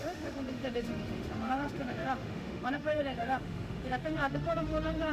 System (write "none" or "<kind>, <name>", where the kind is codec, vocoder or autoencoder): autoencoder, DAC-VAE